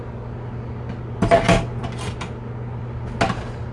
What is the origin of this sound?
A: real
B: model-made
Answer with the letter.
A